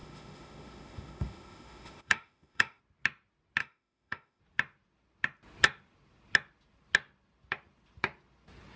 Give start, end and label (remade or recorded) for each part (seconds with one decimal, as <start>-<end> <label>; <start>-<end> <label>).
0.0-2.8 remade; 2.8-3.6 recorded; 3.6-4.4 remade; 4.4-8.8 recorded

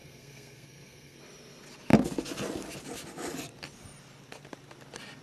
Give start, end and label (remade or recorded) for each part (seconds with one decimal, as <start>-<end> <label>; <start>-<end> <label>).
0.0-1.2 remade; 1.2-5.2 recorded

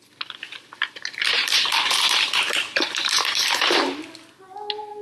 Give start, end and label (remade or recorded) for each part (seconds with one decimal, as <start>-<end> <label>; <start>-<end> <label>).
0.0-1.2 recorded; 1.2-3.8 remade; 3.8-5.0 recorded